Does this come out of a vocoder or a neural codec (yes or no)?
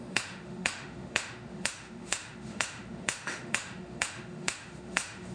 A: yes